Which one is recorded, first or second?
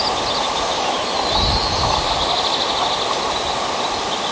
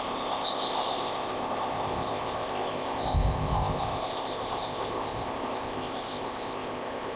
first